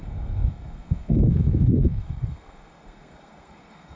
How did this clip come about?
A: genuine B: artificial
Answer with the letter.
B